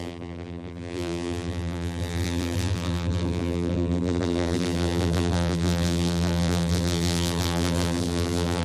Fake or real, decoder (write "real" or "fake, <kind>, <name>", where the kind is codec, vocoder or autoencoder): fake, vocoder, BigVGAN v2